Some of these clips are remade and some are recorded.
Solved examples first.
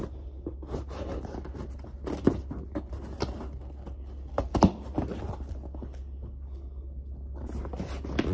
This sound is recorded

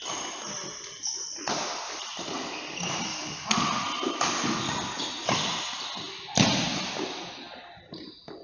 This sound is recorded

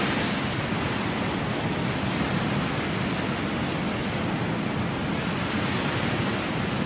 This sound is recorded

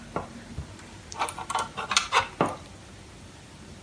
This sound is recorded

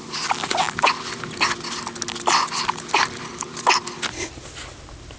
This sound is recorded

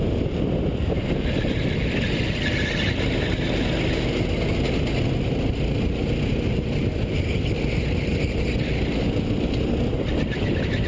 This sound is recorded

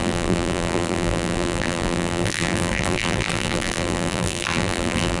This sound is remade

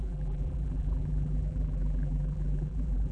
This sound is remade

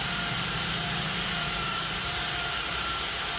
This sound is remade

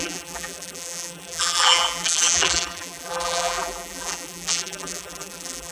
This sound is remade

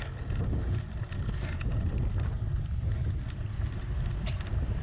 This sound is recorded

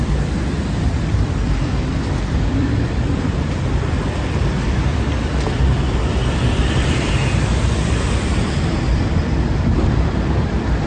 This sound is remade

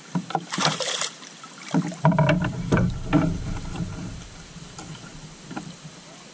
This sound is remade